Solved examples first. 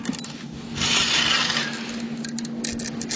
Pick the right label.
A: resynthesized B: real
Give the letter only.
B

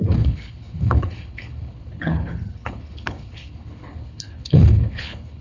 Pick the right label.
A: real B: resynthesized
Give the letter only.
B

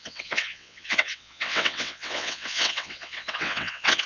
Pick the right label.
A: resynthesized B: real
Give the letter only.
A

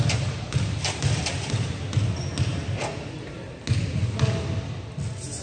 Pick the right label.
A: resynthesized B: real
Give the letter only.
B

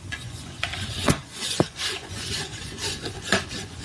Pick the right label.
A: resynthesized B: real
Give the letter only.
A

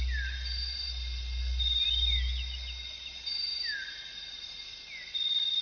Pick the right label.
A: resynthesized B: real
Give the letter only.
B